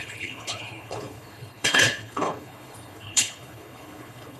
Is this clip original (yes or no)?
no